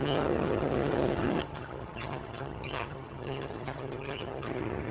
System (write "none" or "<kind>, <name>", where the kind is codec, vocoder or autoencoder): vocoder, HiFi-GAN